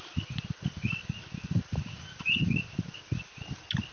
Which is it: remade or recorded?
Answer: recorded